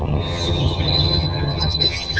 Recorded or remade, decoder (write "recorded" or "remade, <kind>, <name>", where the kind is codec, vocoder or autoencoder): remade, vocoder, HiFi-GAN